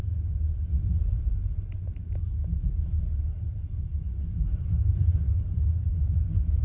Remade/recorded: remade